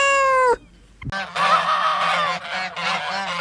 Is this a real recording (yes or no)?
yes